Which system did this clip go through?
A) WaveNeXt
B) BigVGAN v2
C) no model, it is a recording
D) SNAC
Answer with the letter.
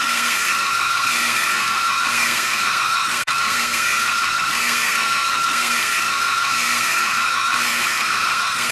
D